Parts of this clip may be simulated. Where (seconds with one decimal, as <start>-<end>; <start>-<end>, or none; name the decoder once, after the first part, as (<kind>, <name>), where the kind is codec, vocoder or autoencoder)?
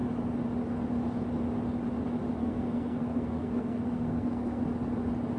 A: 2.4-4.6 (codec, SNAC)